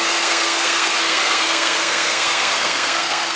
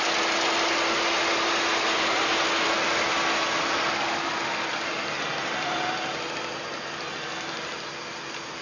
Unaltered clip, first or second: second